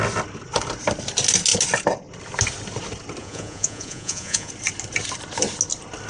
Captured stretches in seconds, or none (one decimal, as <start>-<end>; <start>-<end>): 0.0-3.2; 4.5-6.1